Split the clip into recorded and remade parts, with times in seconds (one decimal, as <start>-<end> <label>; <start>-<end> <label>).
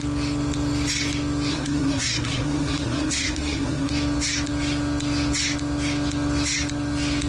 0.0-1.5 recorded; 1.5-3.9 remade; 3.9-7.3 recorded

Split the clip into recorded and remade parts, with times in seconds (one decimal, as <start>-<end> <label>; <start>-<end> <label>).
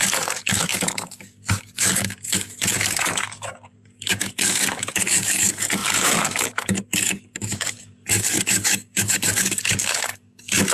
0.0-10.7 remade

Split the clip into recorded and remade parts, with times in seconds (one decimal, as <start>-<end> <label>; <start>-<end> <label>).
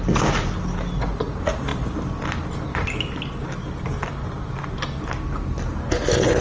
0.0-6.4 recorded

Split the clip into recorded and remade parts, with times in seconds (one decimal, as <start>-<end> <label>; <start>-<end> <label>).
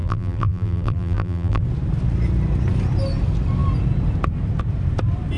0.0-1.6 remade; 1.6-5.4 recorded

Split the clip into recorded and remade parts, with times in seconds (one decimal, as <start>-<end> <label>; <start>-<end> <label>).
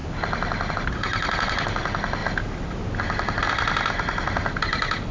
0.0-5.1 recorded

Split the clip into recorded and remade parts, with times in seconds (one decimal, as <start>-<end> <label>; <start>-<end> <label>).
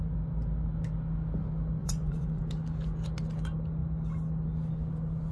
0.0-1.8 recorded; 1.8-2.4 remade; 2.4-5.3 recorded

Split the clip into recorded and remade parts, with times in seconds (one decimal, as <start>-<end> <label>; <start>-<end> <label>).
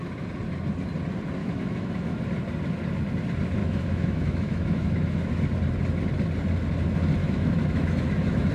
0.0-1.4 recorded; 1.4-2.2 remade; 2.2-3.6 recorded; 3.6-5.3 remade; 5.3-7.2 recorded; 7.2-8.5 remade